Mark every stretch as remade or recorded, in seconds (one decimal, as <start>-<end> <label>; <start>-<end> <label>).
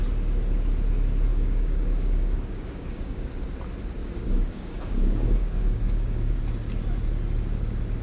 0.0-1.3 recorded; 1.3-3.3 remade; 3.3-4.0 recorded; 4.0-6.4 remade; 6.4-8.0 recorded